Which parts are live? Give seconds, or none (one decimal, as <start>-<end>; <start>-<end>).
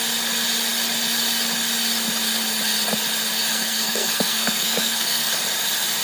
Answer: 0.0-3.5; 5.3-6.0